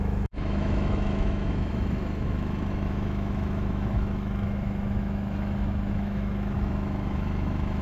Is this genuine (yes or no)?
no